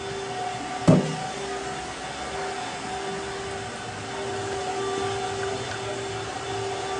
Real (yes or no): yes